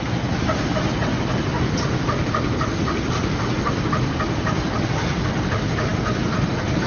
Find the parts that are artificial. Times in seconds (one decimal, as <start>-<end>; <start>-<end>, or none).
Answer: 1.5-2.3; 5.9-6.5